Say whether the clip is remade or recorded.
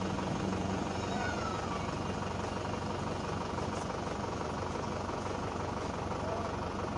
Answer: remade